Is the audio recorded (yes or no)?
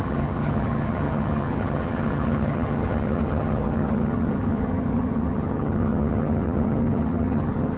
no